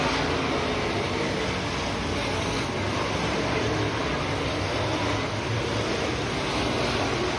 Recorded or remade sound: recorded